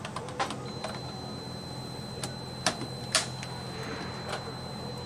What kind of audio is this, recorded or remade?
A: recorded